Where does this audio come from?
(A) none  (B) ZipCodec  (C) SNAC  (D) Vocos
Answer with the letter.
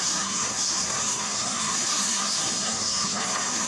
C